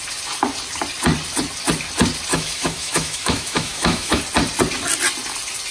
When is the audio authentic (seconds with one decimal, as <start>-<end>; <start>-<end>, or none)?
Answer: 0.0-2.3; 4.2-5.7